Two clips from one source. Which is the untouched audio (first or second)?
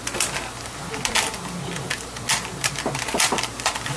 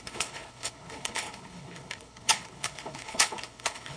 first